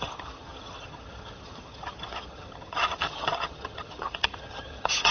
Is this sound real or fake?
fake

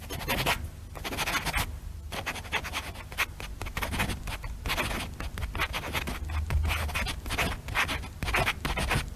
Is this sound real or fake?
real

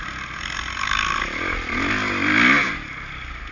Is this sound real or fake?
real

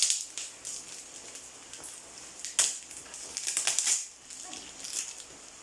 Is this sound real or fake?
real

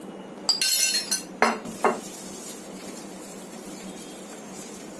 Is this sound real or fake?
real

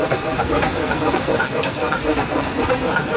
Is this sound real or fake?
fake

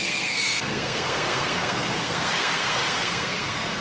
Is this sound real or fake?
fake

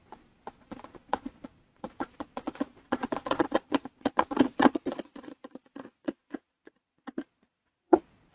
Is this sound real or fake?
fake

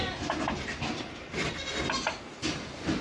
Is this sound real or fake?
real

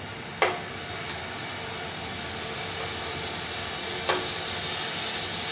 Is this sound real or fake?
real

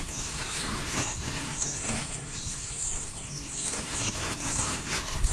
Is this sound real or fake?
fake